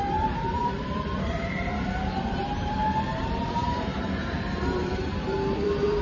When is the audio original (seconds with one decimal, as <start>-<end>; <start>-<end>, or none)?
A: none